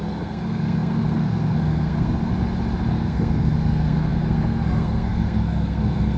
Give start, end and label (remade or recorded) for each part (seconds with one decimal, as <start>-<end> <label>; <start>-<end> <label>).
0.0-2.3 remade; 2.3-2.9 recorded; 2.9-6.2 remade